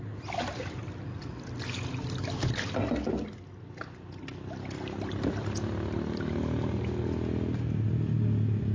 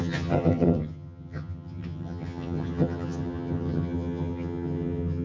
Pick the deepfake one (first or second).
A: second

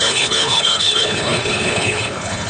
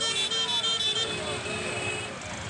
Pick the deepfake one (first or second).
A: first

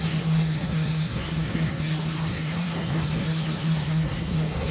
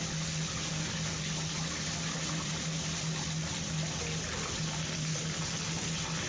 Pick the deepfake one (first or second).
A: first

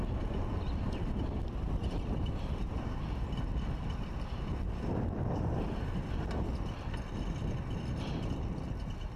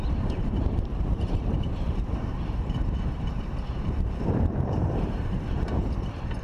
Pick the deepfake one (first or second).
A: second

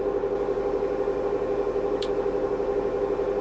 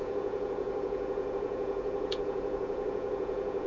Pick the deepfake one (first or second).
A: second